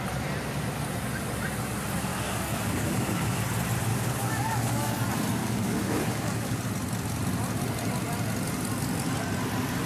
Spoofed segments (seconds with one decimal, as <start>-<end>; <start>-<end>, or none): 2.1-3.4; 3.9-5.0; 5.4-6.6